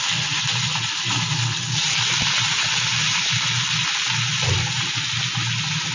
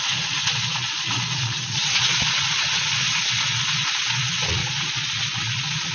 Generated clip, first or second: second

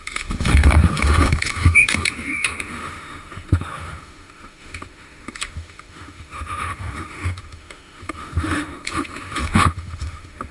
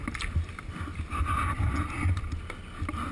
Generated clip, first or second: first